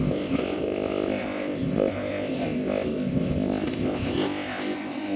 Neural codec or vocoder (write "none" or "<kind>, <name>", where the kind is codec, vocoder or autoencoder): codec, ZipCodec